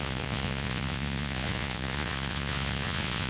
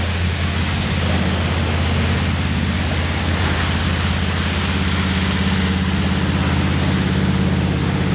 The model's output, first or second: first